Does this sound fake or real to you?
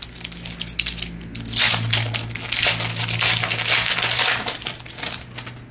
real